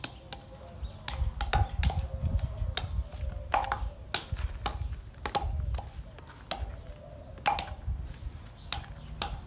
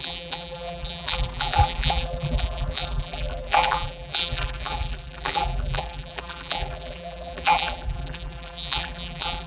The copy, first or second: second